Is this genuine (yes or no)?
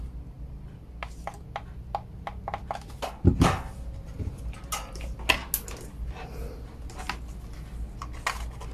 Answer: yes